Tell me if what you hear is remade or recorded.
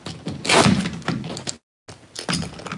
recorded